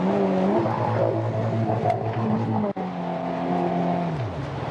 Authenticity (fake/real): real